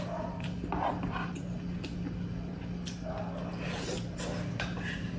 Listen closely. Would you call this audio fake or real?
real